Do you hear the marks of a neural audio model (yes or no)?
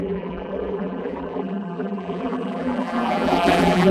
yes